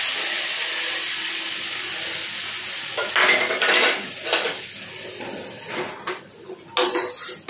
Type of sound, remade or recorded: recorded